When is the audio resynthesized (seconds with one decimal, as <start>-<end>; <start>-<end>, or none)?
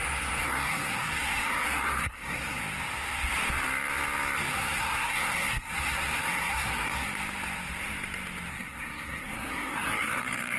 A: 0.0-2.6; 4.5-7.1; 8.5-10.6